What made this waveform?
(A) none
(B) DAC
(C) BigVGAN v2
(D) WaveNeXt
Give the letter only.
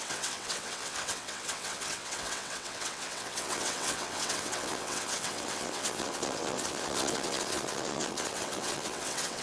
D